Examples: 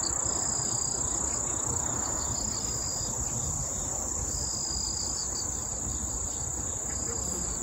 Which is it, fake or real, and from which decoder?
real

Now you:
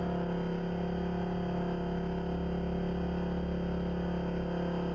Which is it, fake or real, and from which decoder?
real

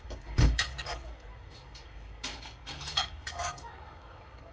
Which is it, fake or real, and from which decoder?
fake, codec, DAC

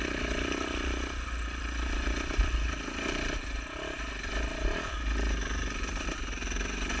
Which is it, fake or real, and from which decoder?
real